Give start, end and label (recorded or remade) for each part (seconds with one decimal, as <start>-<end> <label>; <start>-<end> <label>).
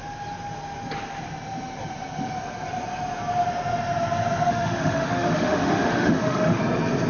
0.0-4.5 recorded; 4.5-6.6 remade; 6.6-7.1 recorded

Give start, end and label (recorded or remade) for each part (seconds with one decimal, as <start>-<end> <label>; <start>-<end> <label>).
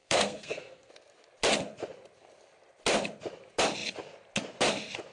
0.0-0.9 remade; 0.9-5.1 recorded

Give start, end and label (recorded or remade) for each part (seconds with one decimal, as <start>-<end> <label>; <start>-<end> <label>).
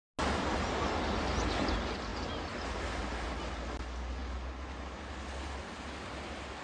0.0-6.6 recorded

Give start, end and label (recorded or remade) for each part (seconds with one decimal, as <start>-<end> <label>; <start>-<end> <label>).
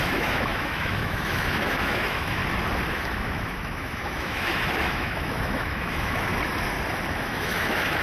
0.0-2.4 remade; 2.4-2.9 recorded; 2.9-6.3 remade; 6.3-7.1 recorded; 7.1-8.0 remade